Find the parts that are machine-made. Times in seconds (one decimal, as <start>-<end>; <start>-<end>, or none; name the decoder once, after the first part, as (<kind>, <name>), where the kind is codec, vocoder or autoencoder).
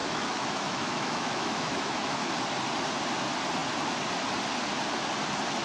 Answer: 0.0-2.3 (autoencoder, DAC-VAE)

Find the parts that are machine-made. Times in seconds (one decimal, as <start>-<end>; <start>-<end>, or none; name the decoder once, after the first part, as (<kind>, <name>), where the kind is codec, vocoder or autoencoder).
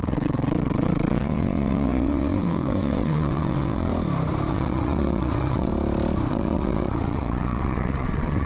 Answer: 0.0-3.9 (vocoder, WaveNeXt); 4.5-5.7; 6.3-8.5